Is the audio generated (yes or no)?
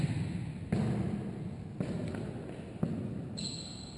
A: no